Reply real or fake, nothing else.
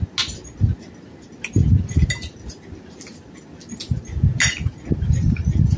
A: real